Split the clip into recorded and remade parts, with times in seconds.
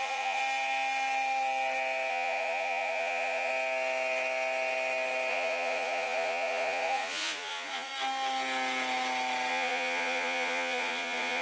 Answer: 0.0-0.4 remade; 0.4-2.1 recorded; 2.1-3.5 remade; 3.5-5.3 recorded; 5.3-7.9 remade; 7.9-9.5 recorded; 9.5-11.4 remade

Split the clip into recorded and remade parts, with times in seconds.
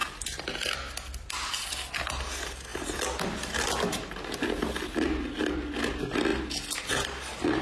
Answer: 0.0-7.6 recorded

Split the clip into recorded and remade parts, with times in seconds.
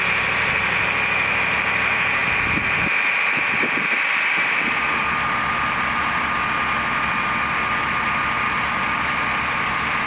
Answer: 0.0-10.1 recorded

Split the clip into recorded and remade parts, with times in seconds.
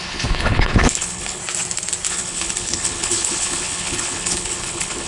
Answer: 0.0-1.4 remade; 1.4-2.1 recorded; 2.1-5.1 remade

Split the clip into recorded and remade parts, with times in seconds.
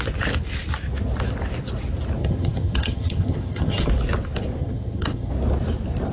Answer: 0.0-2.2 recorded; 2.2-3.9 remade; 3.9-4.6 recorded; 4.6-5.3 remade; 5.3-6.1 recorded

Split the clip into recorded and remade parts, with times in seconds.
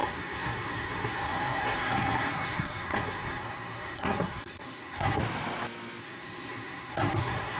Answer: 0.0-5.2 remade; 5.2-6.0 recorded; 6.0-7.6 remade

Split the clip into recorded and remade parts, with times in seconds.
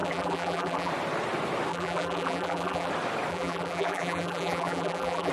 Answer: 0.0-0.9 remade; 0.9-1.7 recorded; 1.7-2.9 remade; 2.9-3.3 recorded; 3.3-5.3 remade